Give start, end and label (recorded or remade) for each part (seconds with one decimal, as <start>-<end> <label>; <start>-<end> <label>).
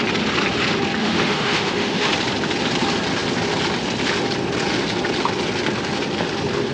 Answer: 0.0-1.0 recorded; 1.0-2.1 remade; 2.1-6.7 recorded